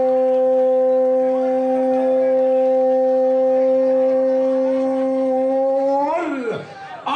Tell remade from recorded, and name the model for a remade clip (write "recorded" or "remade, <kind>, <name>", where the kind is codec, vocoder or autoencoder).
recorded